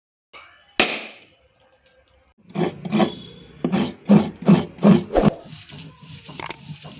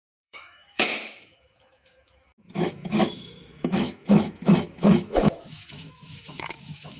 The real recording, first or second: first